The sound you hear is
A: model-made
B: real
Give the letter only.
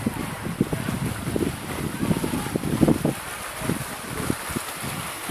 B